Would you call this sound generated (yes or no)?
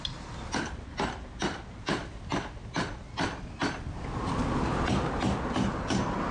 no